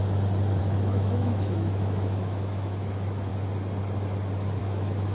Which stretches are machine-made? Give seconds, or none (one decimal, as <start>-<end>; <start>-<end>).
0.6-3.3; 4.6-5.1